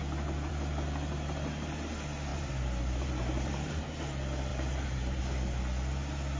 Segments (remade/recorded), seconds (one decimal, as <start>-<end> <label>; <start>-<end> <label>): 0.0-2.3 recorded; 2.3-3.8 remade; 3.8-4.5 recorded; 4.5-5.2 remade; 5.2-6.4 recorded